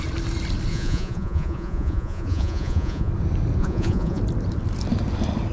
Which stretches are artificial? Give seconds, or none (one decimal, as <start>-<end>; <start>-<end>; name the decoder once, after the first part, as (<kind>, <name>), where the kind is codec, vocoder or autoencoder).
0.7-3.1 (vocoder, Vocos); 3.6-4.2